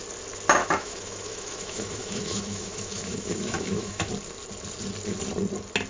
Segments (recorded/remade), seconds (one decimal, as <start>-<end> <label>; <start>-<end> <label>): 0.0-0.6 recorded; 0.6-4.1 remade; 4.1-5.9 recorded